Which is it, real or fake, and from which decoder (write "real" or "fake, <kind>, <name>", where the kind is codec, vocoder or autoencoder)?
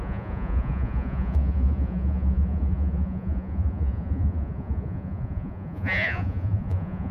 fake, vocoder, Vocos